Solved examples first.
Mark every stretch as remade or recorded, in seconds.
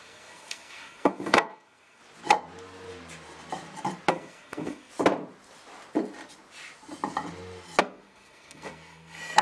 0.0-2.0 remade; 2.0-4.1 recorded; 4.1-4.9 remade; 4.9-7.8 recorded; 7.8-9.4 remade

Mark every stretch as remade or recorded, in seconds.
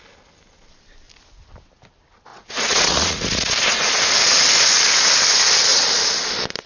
0.0-2.3 recorded; 2.3-3.5 remade; 3.5-6.7 recorded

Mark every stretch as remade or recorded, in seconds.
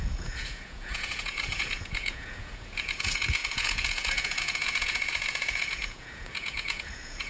0.0-7.3 remade